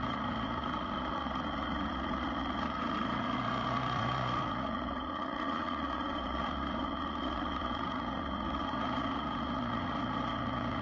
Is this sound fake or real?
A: fake